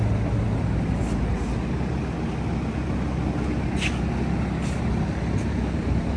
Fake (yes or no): no